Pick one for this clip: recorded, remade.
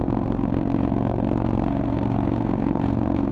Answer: remade